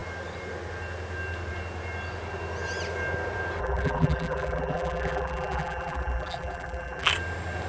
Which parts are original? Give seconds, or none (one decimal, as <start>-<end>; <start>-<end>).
0.0-3.6; 7.1-7.7

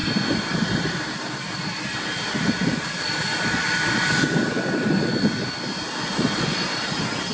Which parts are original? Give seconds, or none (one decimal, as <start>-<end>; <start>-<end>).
0.0-7.3

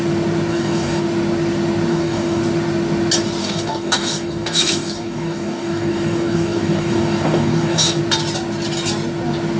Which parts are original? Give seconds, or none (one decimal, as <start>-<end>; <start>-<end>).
0.0-0.5; 1.0-1.9; 2.4-3.4; 8.0-9.6

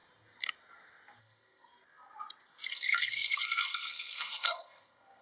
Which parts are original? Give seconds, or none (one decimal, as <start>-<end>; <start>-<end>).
0.0-1.2; 1.7-2.7